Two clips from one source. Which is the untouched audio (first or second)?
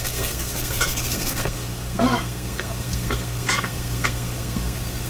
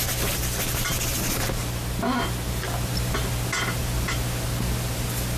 second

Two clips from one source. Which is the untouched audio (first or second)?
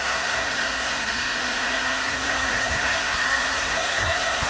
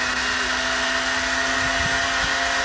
second